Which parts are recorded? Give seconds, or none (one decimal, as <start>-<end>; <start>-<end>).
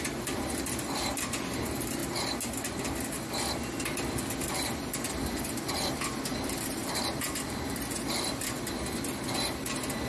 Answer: 2.0-4.5